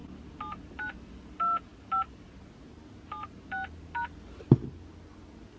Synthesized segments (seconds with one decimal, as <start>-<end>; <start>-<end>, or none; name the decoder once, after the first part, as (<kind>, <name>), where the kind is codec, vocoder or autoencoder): none